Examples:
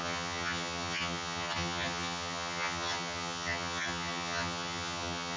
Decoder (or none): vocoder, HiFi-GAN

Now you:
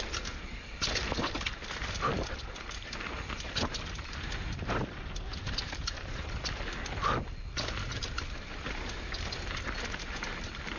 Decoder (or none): none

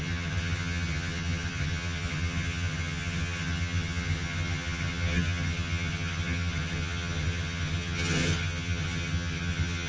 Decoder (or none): vocoder, HiFi-GAN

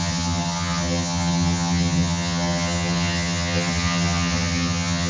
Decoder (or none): vocoder, HiFi-GAN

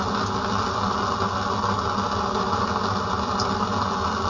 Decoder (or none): none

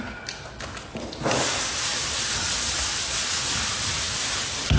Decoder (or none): none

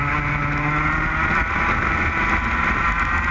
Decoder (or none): none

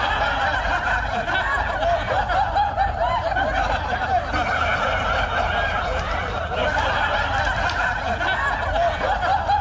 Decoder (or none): none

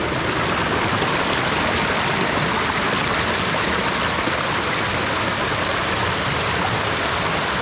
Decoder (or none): none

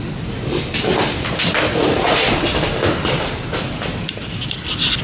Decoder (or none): none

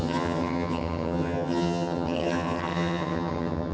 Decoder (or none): vocoder, HiFi-GAN